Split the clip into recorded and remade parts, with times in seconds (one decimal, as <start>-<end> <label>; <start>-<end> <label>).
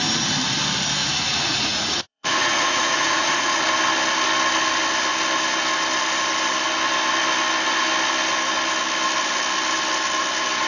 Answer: 0.0-1.0 recorded; 1.0-3.6 remade; 3.6-10.7 recorded